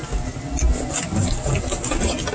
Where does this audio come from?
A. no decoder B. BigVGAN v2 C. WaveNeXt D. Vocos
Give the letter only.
A